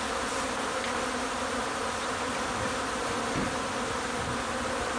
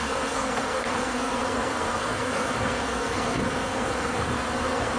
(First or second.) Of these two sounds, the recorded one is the first